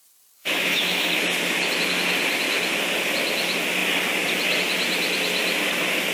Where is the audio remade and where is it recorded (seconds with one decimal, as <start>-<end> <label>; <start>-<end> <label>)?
0.0-0.4 recorded; 0.4-1.1 remade; 1.1-6.1 recorded